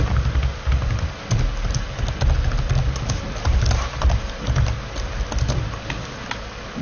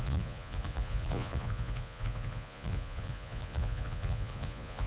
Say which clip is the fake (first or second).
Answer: second